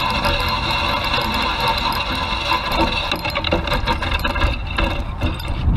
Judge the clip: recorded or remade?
recorded